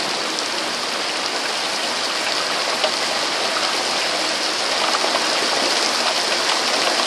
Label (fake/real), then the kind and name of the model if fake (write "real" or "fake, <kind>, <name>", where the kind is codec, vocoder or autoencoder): real